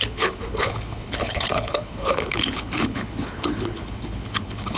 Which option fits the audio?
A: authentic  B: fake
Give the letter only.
B